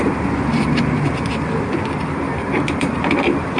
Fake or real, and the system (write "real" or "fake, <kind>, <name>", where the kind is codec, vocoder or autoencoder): fake, vocoder, BigVGAN v2